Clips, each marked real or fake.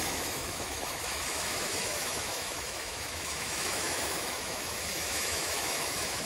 fake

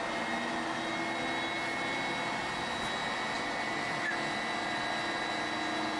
real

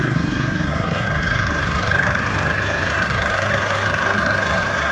fake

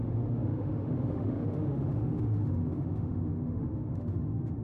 fake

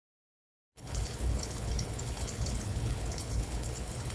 fake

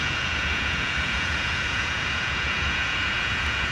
fake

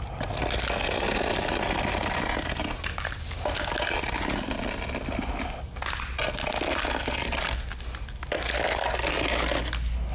real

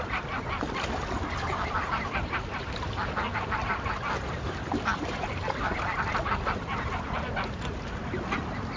real